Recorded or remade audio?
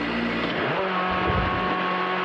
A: recorded